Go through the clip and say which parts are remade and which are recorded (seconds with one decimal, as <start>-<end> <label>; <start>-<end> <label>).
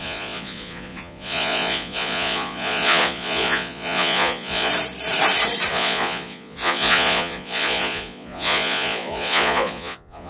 0.0-4.7 remade; 4.7-5.7 recorded; 5.7-10.3 remade